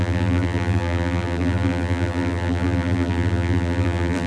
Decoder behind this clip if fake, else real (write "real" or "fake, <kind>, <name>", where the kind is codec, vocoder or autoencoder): fake, vocoder, BigVGAN v2